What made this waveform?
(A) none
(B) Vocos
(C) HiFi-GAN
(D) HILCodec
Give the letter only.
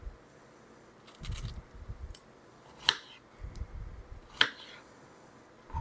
A